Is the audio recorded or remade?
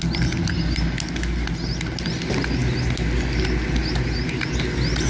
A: recorded